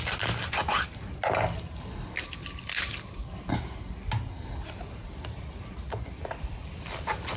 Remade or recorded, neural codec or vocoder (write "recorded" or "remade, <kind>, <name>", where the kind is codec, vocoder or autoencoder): recorded